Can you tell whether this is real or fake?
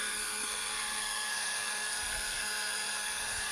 fake